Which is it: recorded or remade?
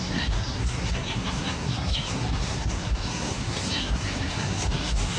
remade